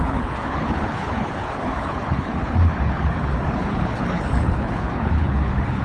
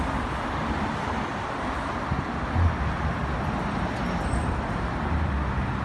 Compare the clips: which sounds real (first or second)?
second